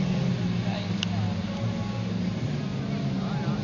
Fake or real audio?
real